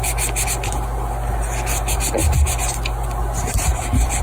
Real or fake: real